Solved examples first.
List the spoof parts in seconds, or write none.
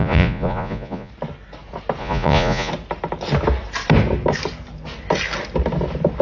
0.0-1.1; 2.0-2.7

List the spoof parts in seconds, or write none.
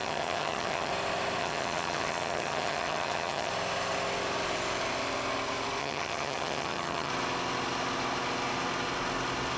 0.0-0.9; 1.4-3.5; 5.8-7.1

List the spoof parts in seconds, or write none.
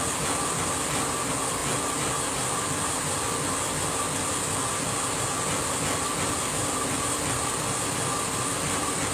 none